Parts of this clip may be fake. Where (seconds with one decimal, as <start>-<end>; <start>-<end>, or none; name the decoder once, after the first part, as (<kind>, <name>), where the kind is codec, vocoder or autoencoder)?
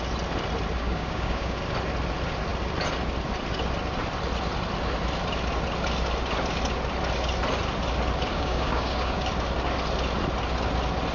0.8-1.6 (codec, DAC); 8.3-9.3